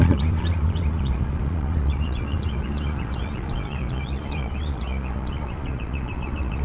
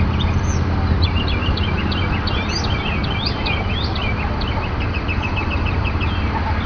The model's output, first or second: first